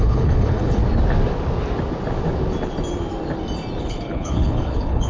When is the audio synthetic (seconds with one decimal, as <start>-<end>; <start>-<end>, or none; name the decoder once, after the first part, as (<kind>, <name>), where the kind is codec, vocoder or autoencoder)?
0.0-0.8 (codec, HILCodec); 3.8-5.1